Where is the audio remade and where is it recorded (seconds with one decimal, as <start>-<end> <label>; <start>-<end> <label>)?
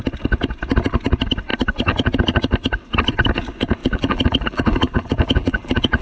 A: 0.0-3.8 recorded; 3.8-6.0 remade